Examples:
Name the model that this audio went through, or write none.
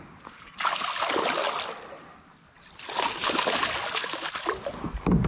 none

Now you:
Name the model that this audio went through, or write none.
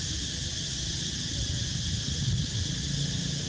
none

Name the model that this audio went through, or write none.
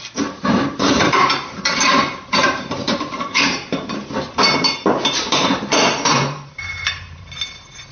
vocoder, BigVGAN v2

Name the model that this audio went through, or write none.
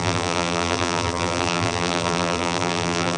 vocoder, BigVGAN v2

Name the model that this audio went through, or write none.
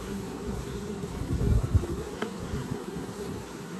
codec, SNAC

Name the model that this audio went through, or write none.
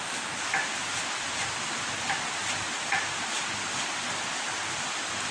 none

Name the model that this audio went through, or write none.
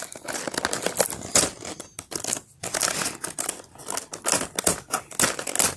none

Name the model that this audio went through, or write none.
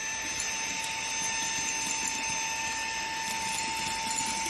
none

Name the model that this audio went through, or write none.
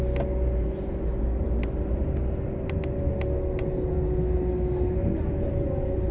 none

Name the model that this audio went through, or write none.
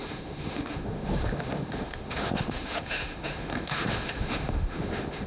autoencoder, DAC-VAE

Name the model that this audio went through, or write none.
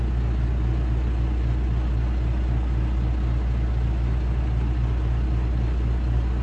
none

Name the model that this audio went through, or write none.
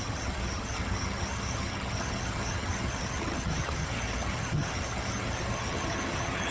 vocoder, HiFi-GAN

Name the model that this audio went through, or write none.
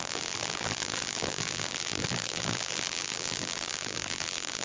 vocoder, BigVGAN v2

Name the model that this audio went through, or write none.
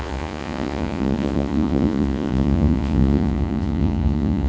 vocoder, Vocos